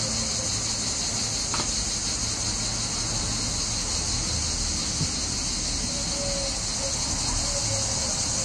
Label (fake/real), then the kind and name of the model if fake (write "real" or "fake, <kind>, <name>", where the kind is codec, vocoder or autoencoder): real